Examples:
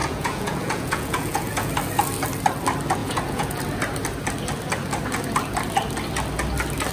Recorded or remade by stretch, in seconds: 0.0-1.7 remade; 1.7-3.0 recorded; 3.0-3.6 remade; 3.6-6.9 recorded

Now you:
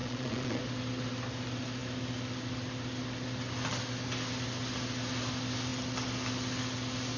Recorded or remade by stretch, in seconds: 0.0-0.6 remade; 0.6-7.2 recorded